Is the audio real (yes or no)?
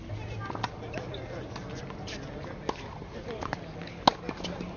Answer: yes